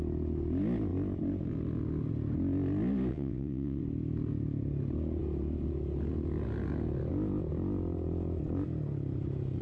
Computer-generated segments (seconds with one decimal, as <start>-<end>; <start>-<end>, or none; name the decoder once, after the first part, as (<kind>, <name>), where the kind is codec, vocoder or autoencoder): 3.1-3.8 (vocoder, WaveNeXt)